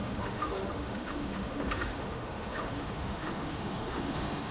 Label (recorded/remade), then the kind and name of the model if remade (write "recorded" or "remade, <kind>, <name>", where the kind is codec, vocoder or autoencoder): remade, autoencoder, DAC-VAE